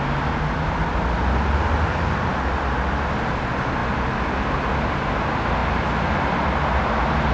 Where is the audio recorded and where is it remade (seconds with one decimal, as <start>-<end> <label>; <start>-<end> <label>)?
0.0-7.3 recorded

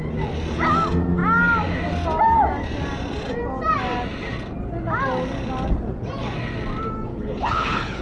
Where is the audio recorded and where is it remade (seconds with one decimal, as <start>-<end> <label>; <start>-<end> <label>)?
0.0-7.1 recorded; 7.1-8.0 remade

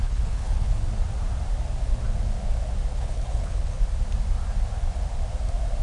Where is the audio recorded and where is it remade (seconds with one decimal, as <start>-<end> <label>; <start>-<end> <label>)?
0.0-0.8 remade; 0.8-2.9 recorded; 2.9-3.8 remade; 3.8-5.8 recorded

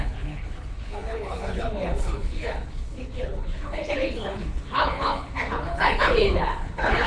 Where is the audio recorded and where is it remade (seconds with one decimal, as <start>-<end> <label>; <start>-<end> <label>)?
0.0-7.1 remade